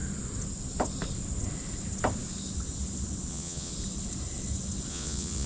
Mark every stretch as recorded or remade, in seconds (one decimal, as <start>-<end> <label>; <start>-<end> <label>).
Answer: 0.0-3.3 recorded; 3.3-3.7 remade; 3.7-4.9 recorded; 4.9-5.5 remade

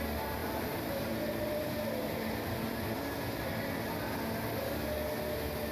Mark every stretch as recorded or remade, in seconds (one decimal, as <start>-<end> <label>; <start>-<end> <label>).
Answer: 0.0-0.4 recorded; 0.4-2.9 remade; 2.9-5.7 recorded

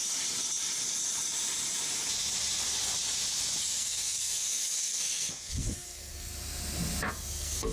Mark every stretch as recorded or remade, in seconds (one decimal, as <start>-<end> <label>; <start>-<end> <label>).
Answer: 0.0-3.6 recorded; 3.6-6.3 remade; 6.3-7.1 recorded; 7.1-7.7 remade

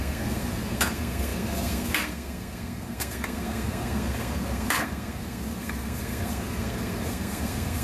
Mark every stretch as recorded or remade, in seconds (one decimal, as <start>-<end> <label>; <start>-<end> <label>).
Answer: 0.0-7.8 remade

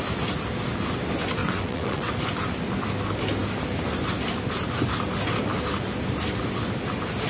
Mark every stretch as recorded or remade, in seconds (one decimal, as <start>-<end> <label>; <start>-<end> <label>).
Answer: 0.0-1.4 recorded; 1.4-2.1 remade; 2.1-7.3 recorded